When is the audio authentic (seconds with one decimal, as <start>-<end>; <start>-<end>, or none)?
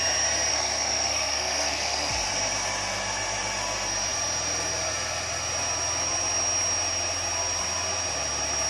0.0-0.5; 2.1-8.7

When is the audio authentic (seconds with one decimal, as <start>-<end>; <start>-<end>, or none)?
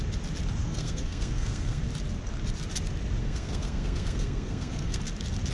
0.0-0.6; 1.8-3.2; 5.0-5.5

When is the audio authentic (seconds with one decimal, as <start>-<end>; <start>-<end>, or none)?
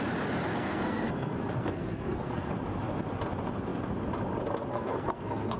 0.0-0.5; 2.5-4.7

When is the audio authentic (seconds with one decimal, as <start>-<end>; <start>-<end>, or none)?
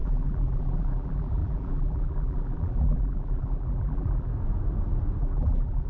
4.3-5.2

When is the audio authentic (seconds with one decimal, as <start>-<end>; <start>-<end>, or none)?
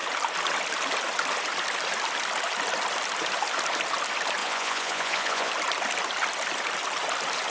0.0-4.4; 5.5-7.5